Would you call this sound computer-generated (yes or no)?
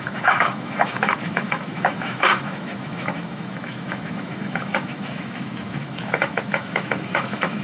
yes